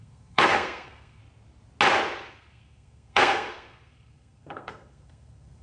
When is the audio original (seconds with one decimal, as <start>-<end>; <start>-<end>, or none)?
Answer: 1.2-2.3